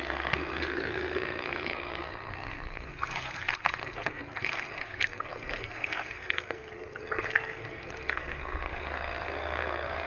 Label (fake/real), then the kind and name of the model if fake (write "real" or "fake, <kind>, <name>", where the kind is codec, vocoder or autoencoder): fake, codec, SNAC